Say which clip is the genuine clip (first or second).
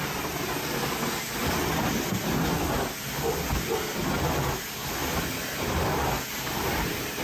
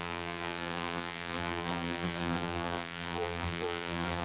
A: first